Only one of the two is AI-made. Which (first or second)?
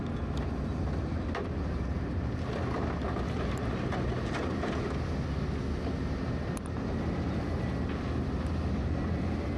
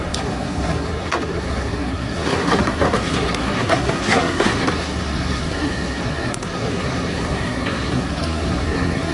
second